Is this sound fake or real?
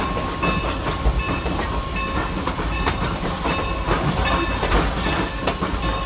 real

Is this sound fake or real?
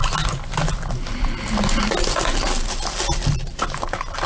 real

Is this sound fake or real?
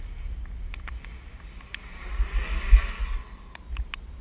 real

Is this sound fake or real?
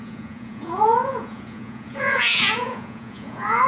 fake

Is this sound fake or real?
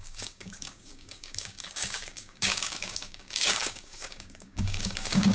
fake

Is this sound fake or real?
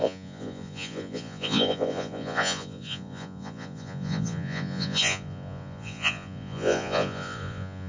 fake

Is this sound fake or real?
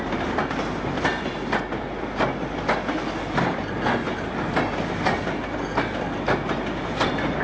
real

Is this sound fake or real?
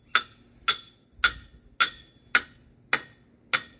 real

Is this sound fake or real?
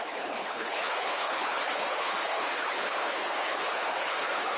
fake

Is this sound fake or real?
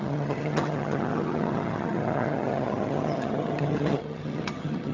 fake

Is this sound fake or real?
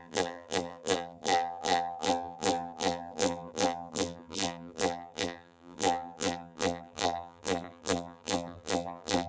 fake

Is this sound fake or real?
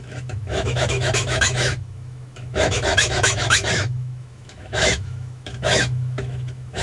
fake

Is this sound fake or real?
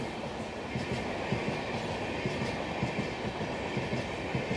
real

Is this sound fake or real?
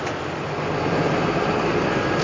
real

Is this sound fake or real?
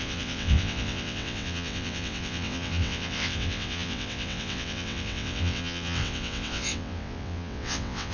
fake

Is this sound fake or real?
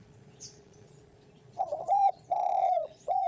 fake